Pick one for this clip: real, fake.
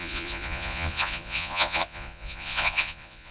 fake